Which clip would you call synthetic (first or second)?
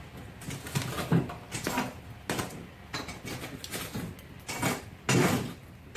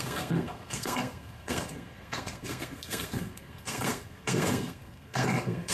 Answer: second